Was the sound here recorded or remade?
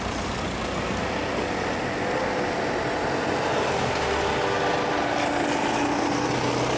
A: recorded